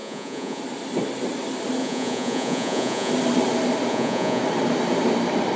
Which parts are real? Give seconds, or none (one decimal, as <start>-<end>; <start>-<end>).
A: 0.6-1.8; 3.1-3.9; 4.4-5.6

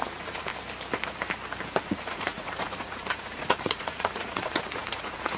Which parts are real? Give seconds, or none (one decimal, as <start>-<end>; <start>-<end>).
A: 0.5-1.8

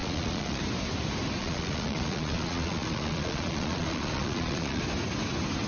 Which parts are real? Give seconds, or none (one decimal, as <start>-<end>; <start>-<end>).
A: 0.6-1.4; 4.8-5.7

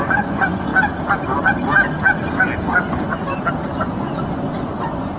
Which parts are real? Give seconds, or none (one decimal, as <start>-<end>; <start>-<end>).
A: 0.7-3.8